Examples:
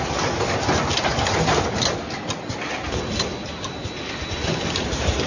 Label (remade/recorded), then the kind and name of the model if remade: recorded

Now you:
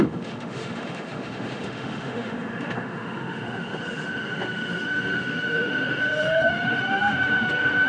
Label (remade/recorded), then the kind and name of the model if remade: remade, autoencoder, DAC-VAE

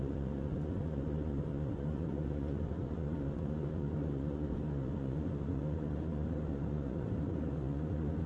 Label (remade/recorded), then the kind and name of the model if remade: remade, vocoder, Vocos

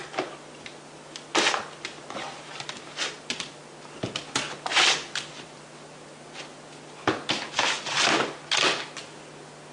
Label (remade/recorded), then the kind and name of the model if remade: recorded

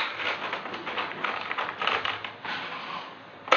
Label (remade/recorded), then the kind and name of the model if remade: recorded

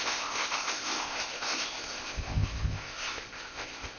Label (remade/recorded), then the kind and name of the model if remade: remade, codec, ZipCodec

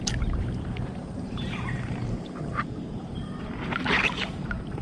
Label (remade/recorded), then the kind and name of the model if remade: remade, vocoder, BigVGAN v2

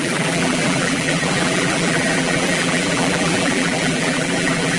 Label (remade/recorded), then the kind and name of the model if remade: remade, vocoder, BigVGAN v2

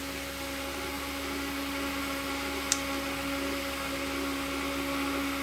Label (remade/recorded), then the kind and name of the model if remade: recorded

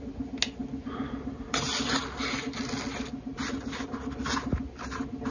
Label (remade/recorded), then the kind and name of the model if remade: recorded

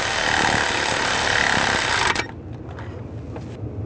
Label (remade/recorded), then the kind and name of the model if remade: recorded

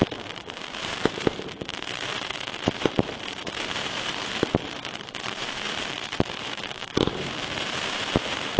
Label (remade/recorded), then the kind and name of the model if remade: remade, vocoder, BigVGAN v2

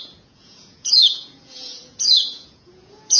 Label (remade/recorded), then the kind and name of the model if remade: remade, vocoder, Vocos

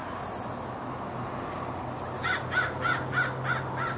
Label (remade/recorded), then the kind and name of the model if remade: recorded